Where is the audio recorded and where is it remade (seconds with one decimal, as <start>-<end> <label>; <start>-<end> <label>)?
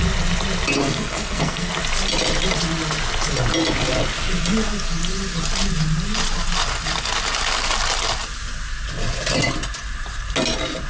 0.0-0.8 recorded; 0.8-1.7 remade; 1.7-10.9 recorded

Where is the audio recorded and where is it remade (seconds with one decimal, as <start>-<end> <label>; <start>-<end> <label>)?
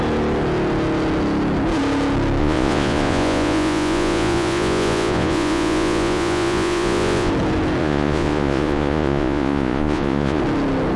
0.0-2.4 recorded; 2.4-7.3 remade; 7.3-7.8 recorded; 7.8-10.4 remade; 10.4-11.0 recorded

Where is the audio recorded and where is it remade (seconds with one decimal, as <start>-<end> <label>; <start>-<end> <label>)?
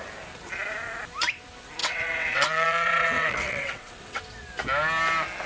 0.0-1.8 recorded; 1.8-4.2 remade; 4.2-5.5 recorded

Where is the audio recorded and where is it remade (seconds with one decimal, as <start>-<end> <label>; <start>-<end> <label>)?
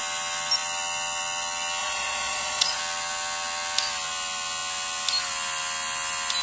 0.0-1.8 recorded; 1.8-2.8 remade; 2.8-6.4 recorded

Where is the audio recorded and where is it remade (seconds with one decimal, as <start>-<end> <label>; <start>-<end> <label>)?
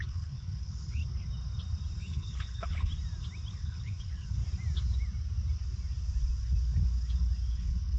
0.0-1.0 remade; 1.0-2.0 recorded; 2.0-2.9 remade; 2.9-3.5 recorded; 3.5-4.4 remade; 4.4-7.5 recorded; 7.5-8.0 remade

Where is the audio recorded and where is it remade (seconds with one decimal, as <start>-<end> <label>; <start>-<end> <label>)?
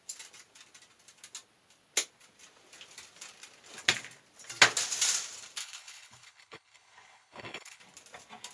0.0-5.6 recorded; 5.6-7.8 remade; 7.8-8.5 recorded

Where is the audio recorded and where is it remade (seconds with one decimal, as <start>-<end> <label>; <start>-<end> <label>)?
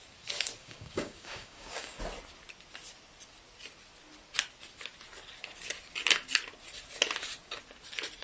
0.0-0.6 recorded; 0.6-2.0 remade; 2.0-8.2 recorded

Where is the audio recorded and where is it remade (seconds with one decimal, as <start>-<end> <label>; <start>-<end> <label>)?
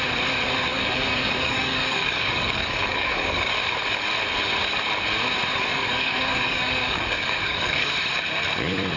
0.0-0.7 recorded; 0.7-3.5 remade; 3.5-5.7 recorded; 5.7-7.9 remade; 7.9-9.0 recorded